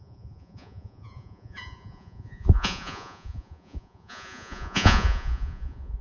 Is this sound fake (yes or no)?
yes